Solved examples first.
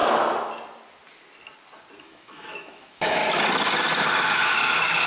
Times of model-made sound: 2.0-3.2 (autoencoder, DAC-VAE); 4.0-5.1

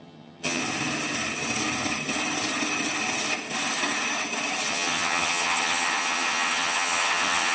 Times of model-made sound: 0.0-0.6 (vocoder, HiFi-GAN); 4.7-7.5

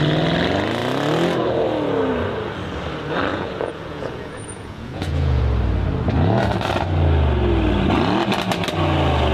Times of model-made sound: 3.3-5.4 (vocoder, Vocos)

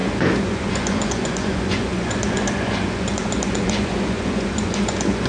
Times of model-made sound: 0.0-5.3 (vocoder, Vocos)

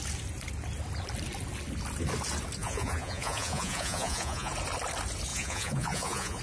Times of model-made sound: 2.6-4.5 (vocoder, Vocos); 5.3-6.4

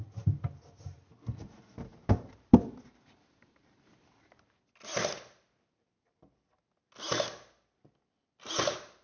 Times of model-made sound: 1.1-4.5 (vocoder, BigVGAN v2)

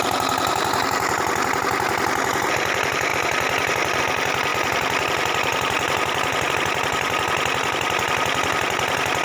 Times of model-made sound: none

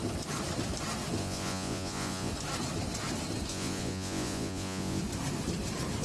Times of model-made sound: 1.2-2.3 (vocoder, Vocos); 3.5-5.0